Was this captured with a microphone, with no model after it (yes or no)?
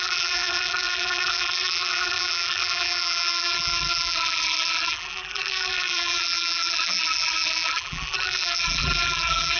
no